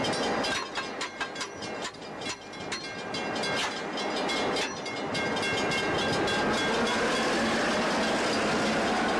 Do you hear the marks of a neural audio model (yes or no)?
no